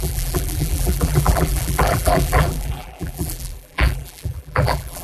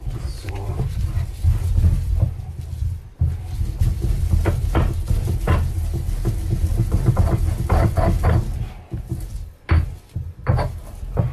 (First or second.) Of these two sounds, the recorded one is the second